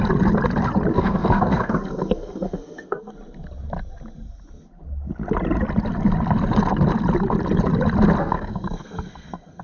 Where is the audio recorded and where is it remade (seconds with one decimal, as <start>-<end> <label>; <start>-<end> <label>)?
0.0-0.9 recorded; 0.9-3.1 remade; 3.1-8.2 recorded; 8.2-9.6 remade